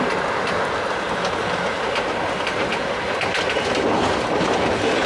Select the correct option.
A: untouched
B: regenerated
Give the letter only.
A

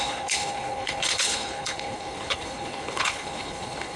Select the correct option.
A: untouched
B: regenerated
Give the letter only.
B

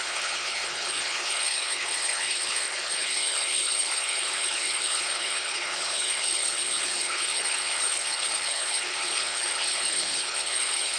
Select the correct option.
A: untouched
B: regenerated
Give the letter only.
B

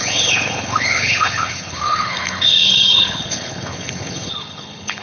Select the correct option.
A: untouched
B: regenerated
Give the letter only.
B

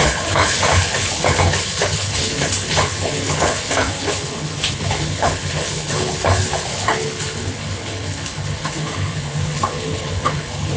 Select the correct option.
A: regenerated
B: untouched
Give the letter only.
A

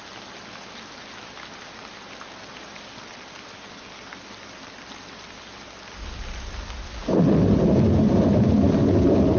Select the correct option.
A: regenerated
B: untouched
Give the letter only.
B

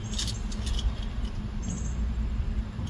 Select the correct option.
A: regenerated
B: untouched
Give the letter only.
B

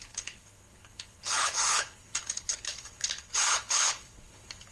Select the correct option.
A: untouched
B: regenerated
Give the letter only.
B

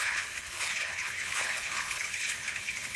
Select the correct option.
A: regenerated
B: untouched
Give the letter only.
A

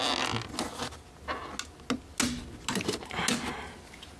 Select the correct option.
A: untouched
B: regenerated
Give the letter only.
A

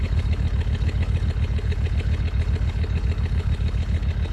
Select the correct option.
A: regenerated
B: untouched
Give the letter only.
A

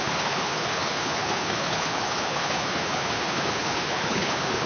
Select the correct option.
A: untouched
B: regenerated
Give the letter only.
B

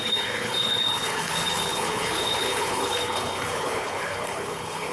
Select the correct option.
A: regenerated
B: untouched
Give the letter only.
A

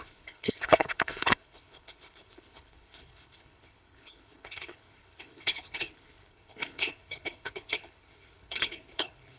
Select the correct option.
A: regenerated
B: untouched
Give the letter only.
A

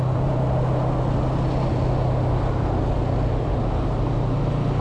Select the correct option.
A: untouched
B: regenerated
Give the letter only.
A